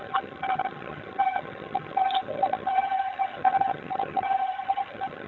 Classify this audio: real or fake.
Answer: fake